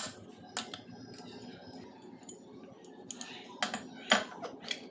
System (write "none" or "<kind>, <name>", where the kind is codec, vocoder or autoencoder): none